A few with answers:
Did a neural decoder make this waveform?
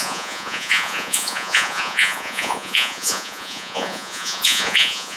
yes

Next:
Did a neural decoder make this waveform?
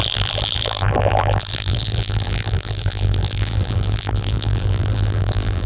yes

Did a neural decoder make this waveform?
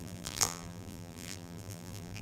yes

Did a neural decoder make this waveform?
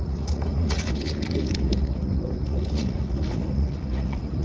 yes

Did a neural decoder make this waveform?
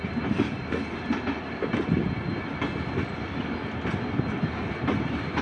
no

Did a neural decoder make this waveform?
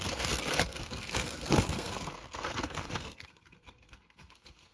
yes